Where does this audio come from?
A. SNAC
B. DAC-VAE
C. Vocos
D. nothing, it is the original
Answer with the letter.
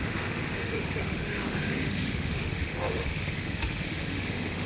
B